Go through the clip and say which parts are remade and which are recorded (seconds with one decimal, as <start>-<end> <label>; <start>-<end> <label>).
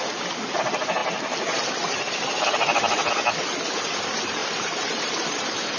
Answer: 0.0-4.4 recorded; 4.4-5.8 remade